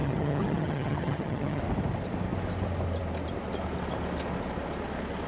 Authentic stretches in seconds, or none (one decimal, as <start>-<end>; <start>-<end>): 1.6-5.3